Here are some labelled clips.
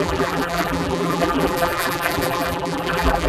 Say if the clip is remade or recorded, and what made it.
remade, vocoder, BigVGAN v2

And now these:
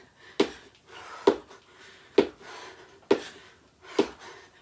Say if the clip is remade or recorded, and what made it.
recorded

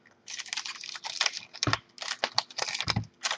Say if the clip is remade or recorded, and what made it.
recorded